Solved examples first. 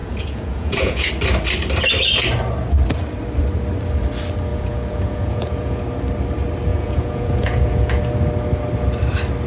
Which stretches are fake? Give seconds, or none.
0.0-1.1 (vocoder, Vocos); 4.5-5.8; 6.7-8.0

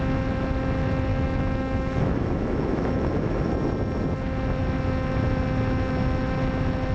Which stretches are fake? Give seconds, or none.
1.1-3.5 (autoencoder, DAC-VAE)